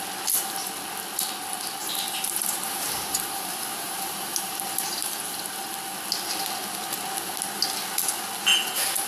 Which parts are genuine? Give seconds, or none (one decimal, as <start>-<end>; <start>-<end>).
0.0-1.8; 5.2-9.1

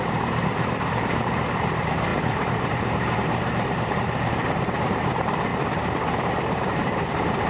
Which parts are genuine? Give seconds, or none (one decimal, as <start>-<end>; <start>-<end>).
5.5-6.3

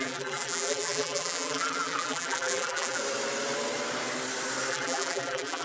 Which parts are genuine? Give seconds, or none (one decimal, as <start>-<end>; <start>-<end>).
3.0-4.7

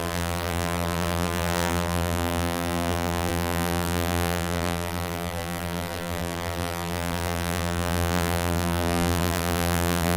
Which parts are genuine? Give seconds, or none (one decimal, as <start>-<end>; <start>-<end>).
none

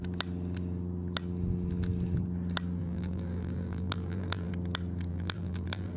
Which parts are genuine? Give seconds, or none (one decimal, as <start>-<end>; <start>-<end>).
0.0-2.8; 4.5-5.1